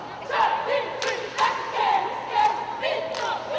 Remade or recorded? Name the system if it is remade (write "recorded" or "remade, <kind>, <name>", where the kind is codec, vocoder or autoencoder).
recorded